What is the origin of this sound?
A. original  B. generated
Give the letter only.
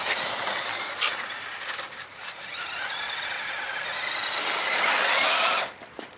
A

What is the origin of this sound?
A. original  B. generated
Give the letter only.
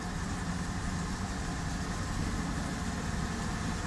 A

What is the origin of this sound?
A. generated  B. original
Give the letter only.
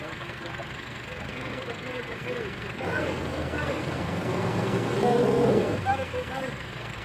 A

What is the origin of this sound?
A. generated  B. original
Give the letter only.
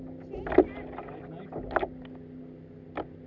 B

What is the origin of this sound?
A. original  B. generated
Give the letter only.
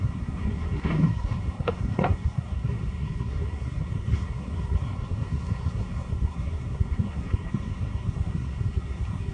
B